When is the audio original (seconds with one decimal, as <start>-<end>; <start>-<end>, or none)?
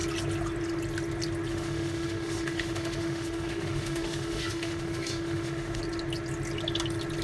0.0-1.5; 5.8-7.2